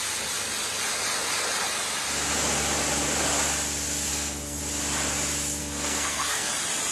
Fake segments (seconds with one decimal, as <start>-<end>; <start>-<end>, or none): 4.1-4.6; 5.6-6.5